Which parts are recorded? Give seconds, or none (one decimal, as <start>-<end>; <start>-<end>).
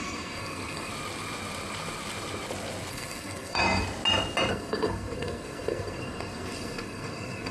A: 0.9-2.9; 3.6-4.5